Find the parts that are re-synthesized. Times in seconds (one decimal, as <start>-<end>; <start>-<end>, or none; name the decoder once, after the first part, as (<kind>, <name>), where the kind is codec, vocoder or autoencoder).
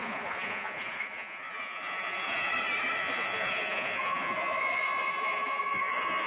0.0-2.5 (vocoder, Vocos); 3.0-6.3